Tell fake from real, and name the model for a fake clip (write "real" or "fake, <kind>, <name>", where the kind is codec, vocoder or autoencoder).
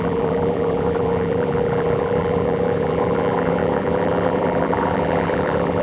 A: fake, vocoder, BigVGAN v2